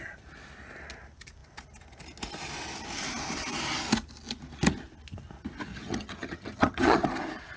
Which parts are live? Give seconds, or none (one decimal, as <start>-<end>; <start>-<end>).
0.0-5.7; 7.1-7.6